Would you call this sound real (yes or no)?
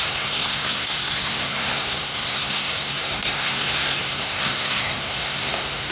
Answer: no